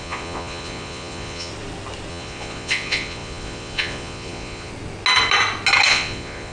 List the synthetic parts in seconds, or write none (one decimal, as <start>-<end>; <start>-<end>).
0.0-1.5; 2.1-4.7; 5.9-6.5